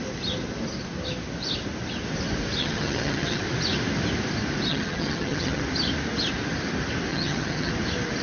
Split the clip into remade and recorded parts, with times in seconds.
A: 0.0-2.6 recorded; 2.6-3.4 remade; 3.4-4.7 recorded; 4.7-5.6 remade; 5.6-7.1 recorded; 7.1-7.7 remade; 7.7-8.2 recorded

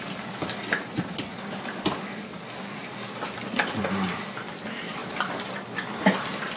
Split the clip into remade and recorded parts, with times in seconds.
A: 0.0-6.6 recorded

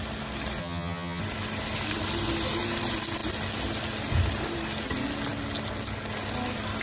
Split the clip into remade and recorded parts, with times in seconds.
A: 0.0-0.6 recorded; 0.6-1.2 remade; 1.2-6.8 recorded

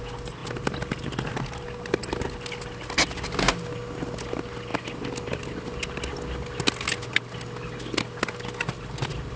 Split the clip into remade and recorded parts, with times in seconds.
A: 0.0-9.4 recorded

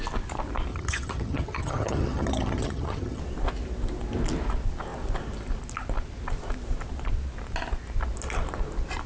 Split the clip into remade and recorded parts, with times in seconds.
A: 0.0-0.7 recorded; 0.7-3.2 remade; 3.2-9.1 recorded